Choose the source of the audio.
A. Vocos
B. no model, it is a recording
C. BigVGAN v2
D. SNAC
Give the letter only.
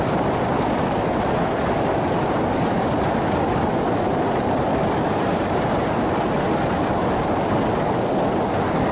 B